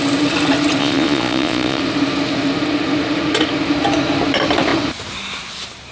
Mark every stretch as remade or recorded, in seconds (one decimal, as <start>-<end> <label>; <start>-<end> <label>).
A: 0.0-0.8 recorded; 0.8-1.8 remade; 1.8-5.9 recorded